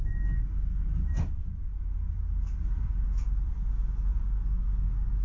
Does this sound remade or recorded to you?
recorded